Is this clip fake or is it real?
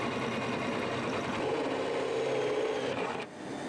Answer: real